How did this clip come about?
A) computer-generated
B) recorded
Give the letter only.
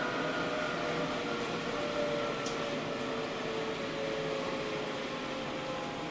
B